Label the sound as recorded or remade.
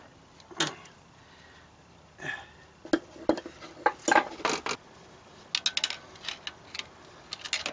recorded